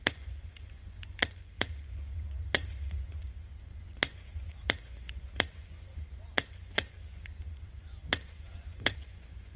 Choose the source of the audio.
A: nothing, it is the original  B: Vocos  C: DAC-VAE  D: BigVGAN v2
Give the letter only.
B